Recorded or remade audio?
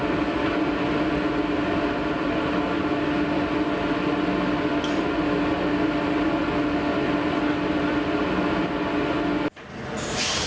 recorded